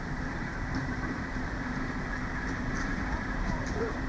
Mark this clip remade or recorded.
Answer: remade